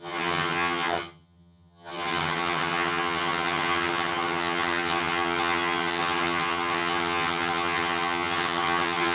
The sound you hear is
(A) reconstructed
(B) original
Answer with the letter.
A